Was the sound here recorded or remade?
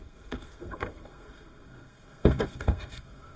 remade